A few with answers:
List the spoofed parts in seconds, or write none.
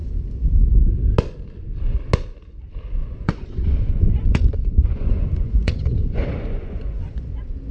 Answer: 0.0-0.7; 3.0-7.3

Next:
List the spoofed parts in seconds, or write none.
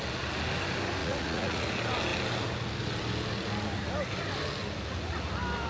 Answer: 1.0-1.7